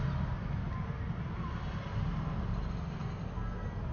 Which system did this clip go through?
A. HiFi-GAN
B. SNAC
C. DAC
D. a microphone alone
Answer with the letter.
D